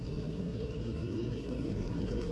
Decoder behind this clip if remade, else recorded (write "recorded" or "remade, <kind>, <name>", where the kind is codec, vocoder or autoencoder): remade, codec, SNAC